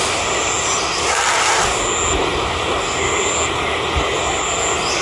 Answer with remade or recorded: recorded